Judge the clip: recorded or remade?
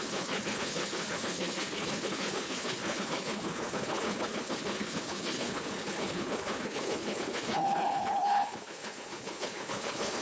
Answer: remade